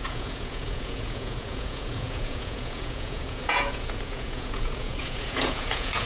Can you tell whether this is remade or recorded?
remade